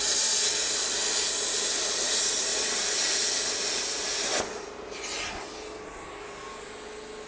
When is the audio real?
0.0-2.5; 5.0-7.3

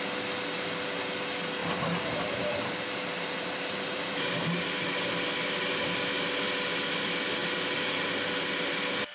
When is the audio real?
0.0-1.6; 4.9-7.4; 8.1-9.1

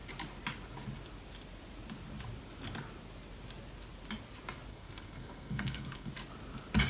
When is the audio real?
0.0-4.7; 6.1-6.9

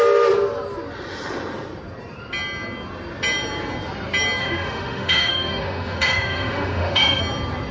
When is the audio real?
0.0-4.4; 7.2-7.7